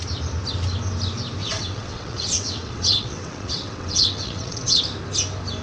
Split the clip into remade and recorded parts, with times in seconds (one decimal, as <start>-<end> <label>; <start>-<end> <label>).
0.0-1.4 recorded; 1.4-4.8 remade; 4.8-5.6 recorded